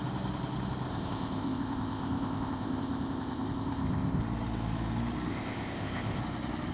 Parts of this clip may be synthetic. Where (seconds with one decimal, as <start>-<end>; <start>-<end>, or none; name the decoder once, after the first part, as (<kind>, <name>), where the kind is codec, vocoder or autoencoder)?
0.9-4.2 (codec, ZipCodec); 5.3-6.2